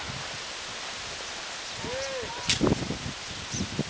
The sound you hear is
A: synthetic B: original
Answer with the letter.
B